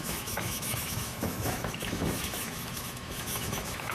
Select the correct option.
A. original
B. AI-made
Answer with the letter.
B